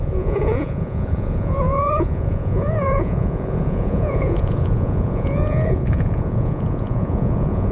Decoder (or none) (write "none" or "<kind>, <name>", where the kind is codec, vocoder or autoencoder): vocoder, Vocos